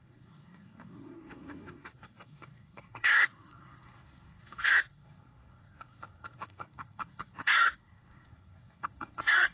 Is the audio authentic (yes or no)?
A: no